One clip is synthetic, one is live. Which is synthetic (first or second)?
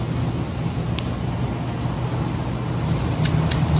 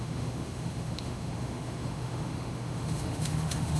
second